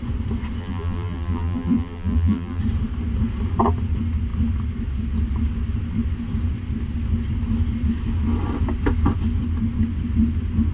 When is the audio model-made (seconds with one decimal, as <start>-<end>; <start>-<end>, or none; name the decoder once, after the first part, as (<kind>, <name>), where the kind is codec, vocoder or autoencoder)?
0.6-2.6 (vocoder, BigVGAN v2)